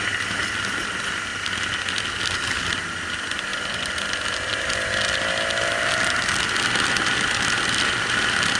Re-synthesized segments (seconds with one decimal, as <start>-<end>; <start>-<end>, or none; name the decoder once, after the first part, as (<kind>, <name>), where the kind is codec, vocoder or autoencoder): 1.3-1.8 (vocoder, BigVGAN v2)